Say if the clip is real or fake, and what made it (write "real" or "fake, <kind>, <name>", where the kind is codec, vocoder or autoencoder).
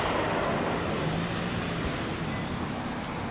real